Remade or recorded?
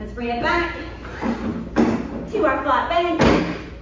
recorded